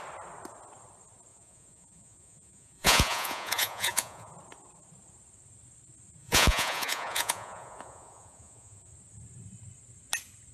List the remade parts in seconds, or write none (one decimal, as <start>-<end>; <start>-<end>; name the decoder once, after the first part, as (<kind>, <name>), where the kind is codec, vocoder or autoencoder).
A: 1.3-4.3 (vocoder, Vocos); 6.2-8.9